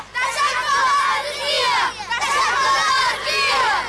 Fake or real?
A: real